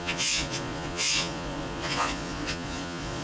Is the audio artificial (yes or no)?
yes